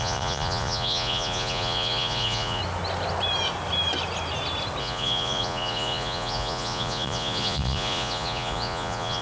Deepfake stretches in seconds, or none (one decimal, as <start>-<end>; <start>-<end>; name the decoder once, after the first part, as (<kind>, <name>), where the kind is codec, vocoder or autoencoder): 0.0-2.6 (vocoder, Vocos); 4.8-9.2

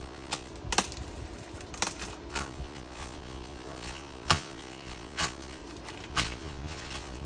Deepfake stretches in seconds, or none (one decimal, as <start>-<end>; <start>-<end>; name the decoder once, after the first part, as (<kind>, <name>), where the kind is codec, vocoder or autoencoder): 0.0-0.5 (vocoder, Vocos); 2.3-5.6; 6.1-7.3

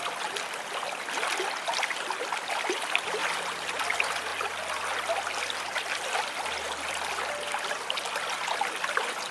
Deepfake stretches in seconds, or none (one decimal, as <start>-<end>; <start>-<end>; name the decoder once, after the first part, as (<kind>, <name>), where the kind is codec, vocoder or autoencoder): none

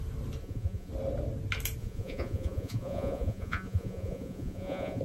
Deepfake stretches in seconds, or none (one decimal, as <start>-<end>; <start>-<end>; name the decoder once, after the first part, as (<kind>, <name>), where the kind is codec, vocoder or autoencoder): 0.4-0.9 (vocoder, Vocos); 1.8-5.0

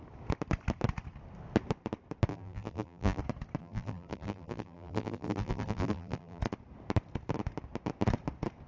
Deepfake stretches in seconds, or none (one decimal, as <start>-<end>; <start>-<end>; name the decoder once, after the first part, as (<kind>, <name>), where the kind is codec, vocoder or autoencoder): 2.3-3.2 (vocoder, BigVGAN v2); 3.6-6.4